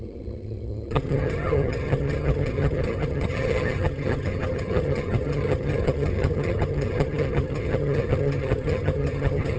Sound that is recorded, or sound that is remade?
remade